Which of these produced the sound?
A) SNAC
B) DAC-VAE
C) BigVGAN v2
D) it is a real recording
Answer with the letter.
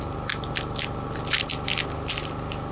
D